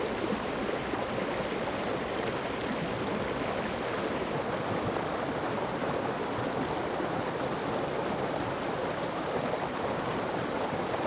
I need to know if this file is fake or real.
real